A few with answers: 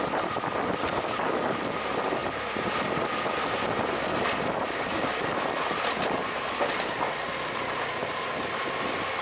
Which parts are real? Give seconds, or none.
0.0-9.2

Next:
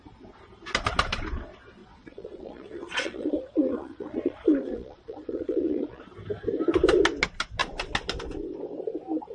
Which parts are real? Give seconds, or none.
0.0-1.8; 6.0-9.3

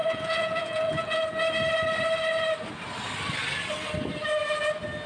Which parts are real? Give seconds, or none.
1.2-5.1

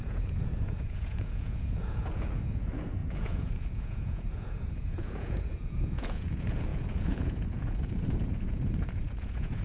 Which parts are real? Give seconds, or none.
none

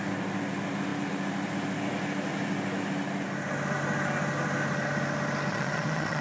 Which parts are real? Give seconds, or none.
0.0-5.5

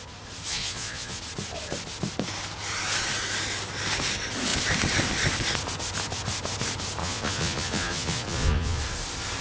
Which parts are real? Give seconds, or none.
0.0-0.5; 1.2-7.0; 8.8-9.4